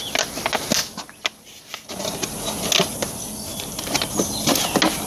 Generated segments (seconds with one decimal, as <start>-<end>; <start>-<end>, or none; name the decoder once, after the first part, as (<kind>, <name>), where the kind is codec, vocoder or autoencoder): 3.5-4.1 (vocoder, BigVGAN v2)